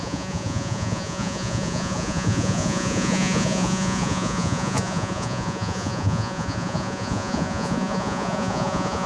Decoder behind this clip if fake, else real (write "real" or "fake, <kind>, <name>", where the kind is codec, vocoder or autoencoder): fake, vocoder, Vocos